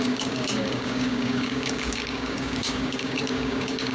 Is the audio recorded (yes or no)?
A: no